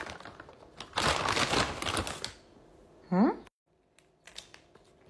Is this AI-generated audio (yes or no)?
no